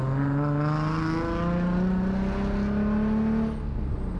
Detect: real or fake real